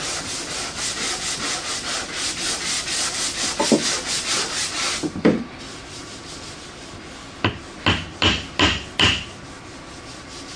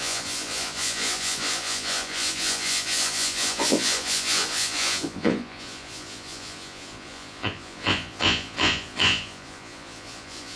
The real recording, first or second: first